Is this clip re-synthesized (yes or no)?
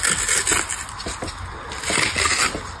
no